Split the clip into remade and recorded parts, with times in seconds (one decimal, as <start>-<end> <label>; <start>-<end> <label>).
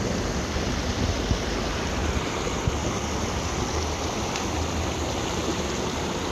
0.0-6.3 recorded